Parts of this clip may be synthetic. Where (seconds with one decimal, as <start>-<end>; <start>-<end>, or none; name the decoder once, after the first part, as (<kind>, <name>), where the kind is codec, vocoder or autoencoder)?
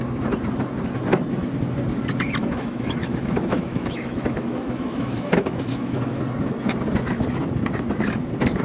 2.4-6.2 (autoencoder, DAC-VAE)